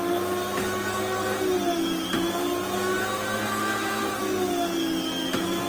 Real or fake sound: real